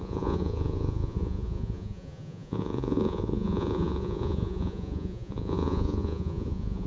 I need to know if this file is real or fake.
fake